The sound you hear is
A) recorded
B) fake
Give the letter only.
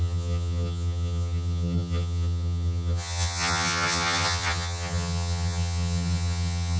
B